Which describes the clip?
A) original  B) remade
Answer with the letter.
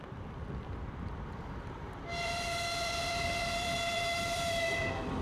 B